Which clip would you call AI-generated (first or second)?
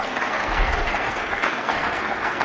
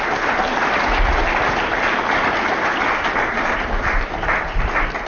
first